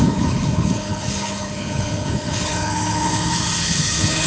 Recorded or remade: remade